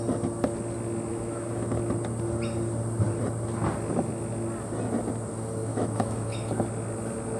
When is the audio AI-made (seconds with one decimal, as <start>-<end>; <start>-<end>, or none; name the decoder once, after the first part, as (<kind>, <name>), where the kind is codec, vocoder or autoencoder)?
1.1-1.8 (autoencoder, DAC-VAE); 5.7-6.5